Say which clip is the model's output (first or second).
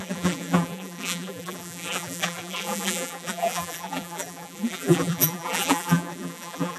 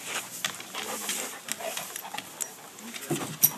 first